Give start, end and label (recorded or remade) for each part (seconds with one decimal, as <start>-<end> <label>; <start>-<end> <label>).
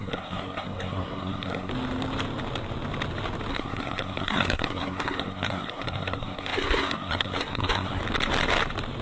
0.0-1.7 remade; 1.7-3.5 recorded; 3.5-8.0 remade; 8.0-9.0 recorded